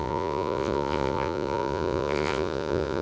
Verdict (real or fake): fake